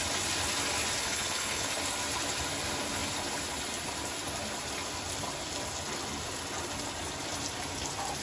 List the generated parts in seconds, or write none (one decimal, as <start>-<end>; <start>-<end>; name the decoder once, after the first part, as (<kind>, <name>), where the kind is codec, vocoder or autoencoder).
1.0-1.7 (codec, HILCodec)